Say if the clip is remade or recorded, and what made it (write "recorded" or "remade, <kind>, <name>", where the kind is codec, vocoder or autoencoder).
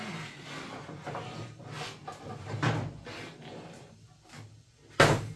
recorded